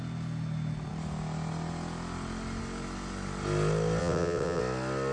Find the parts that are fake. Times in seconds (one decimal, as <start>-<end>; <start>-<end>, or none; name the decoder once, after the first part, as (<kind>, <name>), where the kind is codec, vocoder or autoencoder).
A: 4.0-4.6 (vocoder, WaveNeXt)